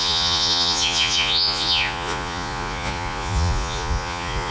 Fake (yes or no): yes